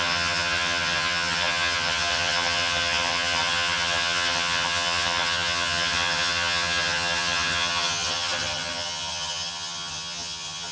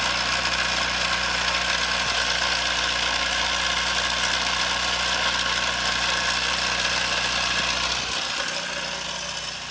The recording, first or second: second